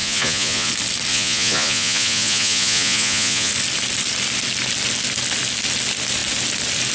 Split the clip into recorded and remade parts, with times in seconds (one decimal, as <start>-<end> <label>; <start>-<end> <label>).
0.0-0.7 remade; 0.7-1.1 recorded; 1.1-3.5 remade; 3.5-6.9 recorded